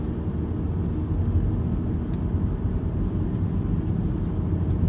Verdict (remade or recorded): recorded